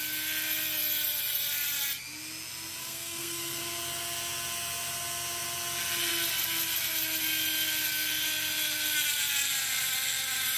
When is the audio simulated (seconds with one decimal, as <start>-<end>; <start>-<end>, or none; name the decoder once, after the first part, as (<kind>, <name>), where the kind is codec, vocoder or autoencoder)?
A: 2.8-3.6 (codec, SNAC)